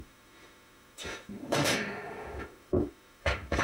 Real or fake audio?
fake